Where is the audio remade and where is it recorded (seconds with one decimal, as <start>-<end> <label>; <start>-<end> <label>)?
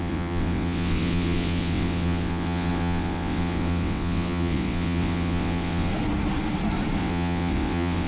0.0-5.9 remade; 5.9-7.0 recorded; 7.0-8.1 remade